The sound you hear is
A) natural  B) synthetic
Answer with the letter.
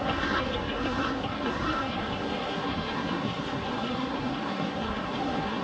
B